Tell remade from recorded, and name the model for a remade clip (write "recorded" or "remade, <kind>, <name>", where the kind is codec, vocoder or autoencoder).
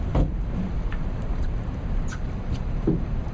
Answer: remade, vocoder, BigVGAN v2